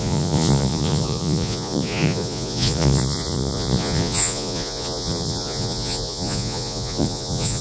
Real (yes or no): no